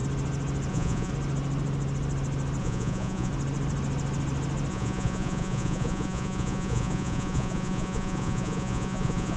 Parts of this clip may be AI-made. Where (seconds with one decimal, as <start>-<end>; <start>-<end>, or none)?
0.7-1.1; 2.6-3.3; 4.7-9.4